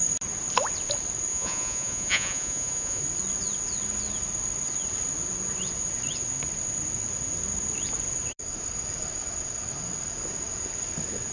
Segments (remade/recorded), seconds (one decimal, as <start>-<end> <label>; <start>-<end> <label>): 0.0-1.3 recorded; 1.3-3.0 remade; 3.0-11.3 recorded